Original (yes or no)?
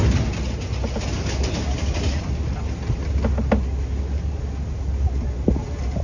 yes